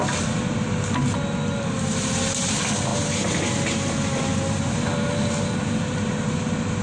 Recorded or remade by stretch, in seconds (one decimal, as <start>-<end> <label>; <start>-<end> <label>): 0.0-6.8 recorded